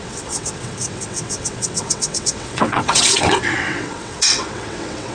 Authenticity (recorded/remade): remade